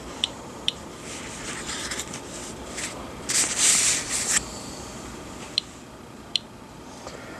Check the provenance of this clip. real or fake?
fake